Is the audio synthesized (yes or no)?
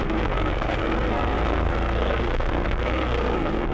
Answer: yes